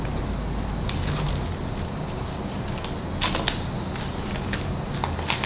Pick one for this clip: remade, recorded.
recorded